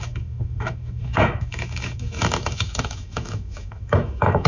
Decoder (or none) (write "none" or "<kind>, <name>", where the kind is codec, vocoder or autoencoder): autoencoder, DAC-VAE